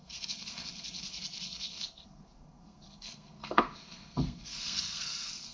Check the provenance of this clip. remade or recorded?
remade